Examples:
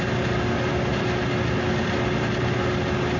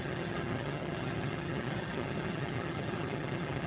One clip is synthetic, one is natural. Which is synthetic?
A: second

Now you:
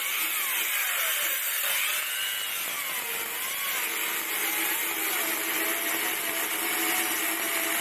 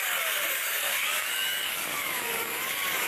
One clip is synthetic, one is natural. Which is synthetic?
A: second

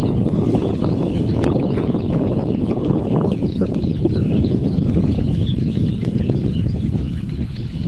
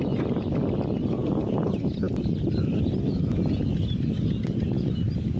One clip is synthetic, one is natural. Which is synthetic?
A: first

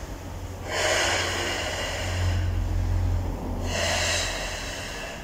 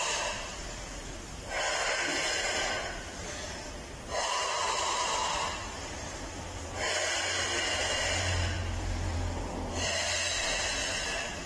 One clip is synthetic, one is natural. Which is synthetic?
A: second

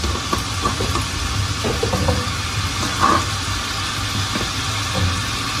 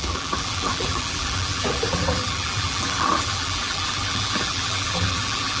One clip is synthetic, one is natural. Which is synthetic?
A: second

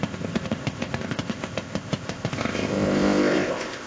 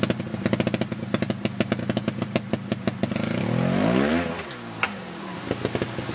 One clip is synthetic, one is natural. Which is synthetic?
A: first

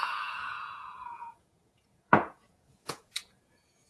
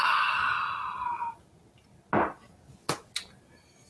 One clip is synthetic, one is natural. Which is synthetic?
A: first